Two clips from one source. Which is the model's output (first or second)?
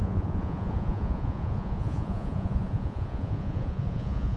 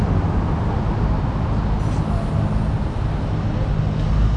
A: first